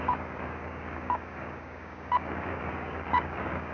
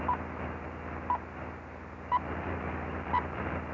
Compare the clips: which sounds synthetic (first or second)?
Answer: first